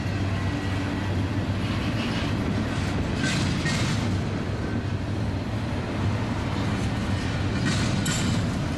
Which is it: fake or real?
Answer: real